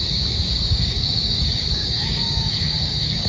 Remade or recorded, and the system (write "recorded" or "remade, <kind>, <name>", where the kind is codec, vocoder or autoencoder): remade, codec, DAC